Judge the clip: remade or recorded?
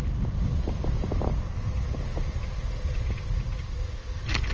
recorded